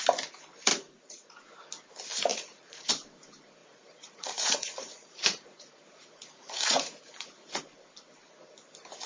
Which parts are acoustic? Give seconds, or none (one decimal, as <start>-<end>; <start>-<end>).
0.0-0.7; 1.4-2.3; 2.9-3.6; 7.6-9.1